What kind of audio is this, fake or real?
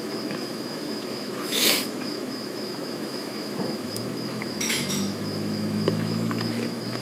fake